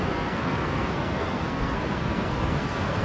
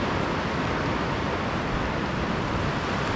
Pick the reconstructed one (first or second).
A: first